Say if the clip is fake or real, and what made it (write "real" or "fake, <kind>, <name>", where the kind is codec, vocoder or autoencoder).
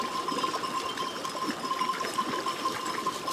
real